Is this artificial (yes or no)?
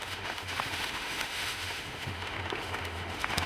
yes